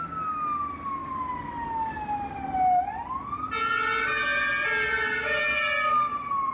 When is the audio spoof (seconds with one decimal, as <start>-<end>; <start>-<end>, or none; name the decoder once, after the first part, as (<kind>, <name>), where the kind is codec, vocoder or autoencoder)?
none